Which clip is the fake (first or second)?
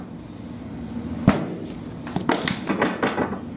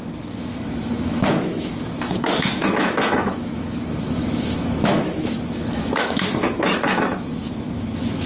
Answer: second